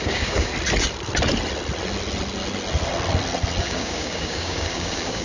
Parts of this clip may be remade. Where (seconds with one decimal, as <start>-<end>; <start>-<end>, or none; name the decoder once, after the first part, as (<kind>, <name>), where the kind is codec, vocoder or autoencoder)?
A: 0.0-0.5 (codec, DAC); 3.6-5.2